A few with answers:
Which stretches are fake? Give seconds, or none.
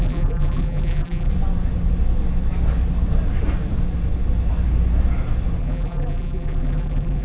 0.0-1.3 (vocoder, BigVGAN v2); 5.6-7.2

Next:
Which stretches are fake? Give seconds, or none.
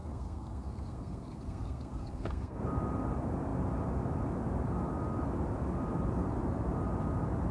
0.0-2.6 (codec, SNAC)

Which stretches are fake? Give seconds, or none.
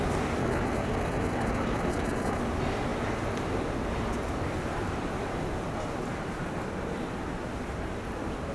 0.4-2.4 (autoencoder, DAC-VAE)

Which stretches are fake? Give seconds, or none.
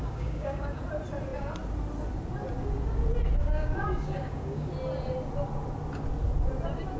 0.0-0.8 (codec, DAC); 3.4-4.7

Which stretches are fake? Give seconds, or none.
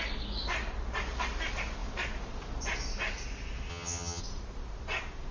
3.7-4.2 (vocoder, HiFi-GAN)